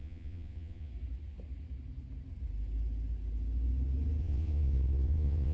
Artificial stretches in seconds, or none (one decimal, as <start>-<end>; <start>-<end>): 0.0-0.9; 4.2-5.5